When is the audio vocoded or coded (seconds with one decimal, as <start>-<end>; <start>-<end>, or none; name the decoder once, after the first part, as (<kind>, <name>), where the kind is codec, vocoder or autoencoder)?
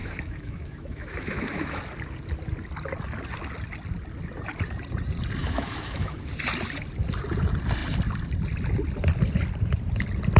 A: 0.0-1.8 (autoencoder, DAC-VAE); 5.4-6.3